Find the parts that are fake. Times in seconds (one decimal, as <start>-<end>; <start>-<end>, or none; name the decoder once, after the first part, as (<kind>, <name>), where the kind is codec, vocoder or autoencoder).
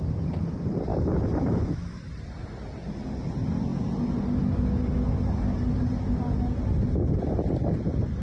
0.9-2.1 (autoencoder, DAC-VAE)